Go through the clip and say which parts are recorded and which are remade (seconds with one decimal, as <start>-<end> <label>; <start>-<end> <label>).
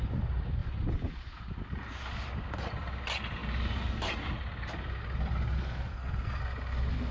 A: 0.0-5.9 recorded; 5.9-6.4 remade; 6.4-7.1 recorded